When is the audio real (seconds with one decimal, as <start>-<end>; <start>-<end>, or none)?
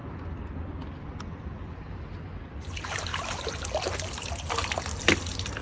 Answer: 0.0-5.6